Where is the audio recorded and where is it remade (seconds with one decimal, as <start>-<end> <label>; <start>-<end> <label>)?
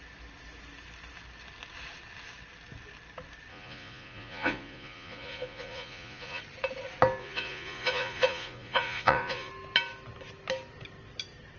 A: 0.0-3.5 recorded; 3.5-6.4 remade; 6.4-7.2 recorded; 7.2-9.5 remade; 9.5-11.6 recorded